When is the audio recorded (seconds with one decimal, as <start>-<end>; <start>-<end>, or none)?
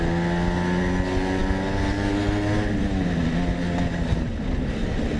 0.0-5.2